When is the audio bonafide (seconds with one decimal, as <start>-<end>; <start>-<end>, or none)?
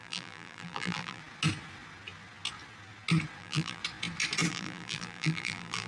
1.2-3.4; 3.8-4.5